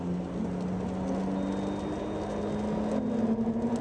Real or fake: real